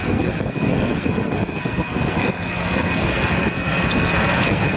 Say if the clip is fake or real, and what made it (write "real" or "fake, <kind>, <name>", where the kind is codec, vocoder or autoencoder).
fake, codec, SNAC